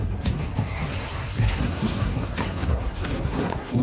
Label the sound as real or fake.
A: fake